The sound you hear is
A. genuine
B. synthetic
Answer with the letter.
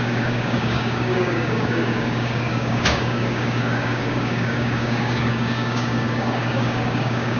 B